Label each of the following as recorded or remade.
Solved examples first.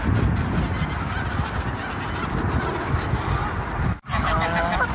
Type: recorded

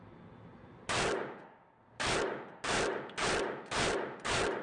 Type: recorded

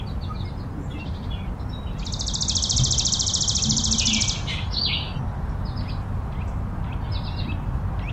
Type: recorded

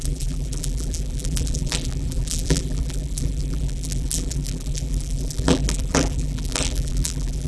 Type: remade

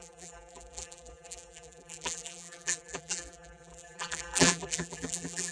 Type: remade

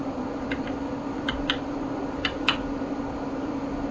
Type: remade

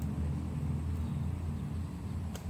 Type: recorded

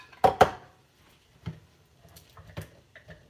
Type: recorded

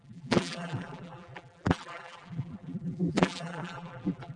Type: remade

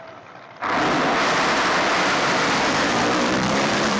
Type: remade